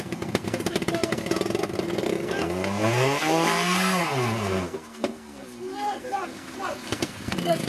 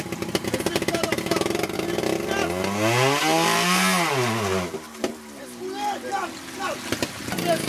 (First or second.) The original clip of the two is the second